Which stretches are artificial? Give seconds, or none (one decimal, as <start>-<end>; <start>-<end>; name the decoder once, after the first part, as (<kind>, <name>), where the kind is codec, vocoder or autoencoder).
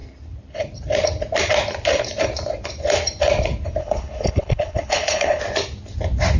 3.8-5.4 (codec, HILCodec)